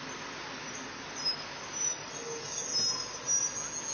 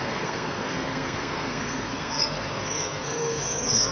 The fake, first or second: second